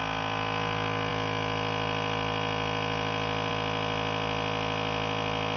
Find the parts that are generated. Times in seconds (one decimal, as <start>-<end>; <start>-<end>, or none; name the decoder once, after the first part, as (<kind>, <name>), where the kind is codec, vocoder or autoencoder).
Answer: none